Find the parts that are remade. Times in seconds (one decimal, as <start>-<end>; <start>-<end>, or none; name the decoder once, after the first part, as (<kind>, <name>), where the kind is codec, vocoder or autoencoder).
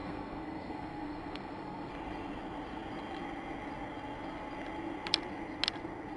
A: 0.0-1.9 (codec, SNAC)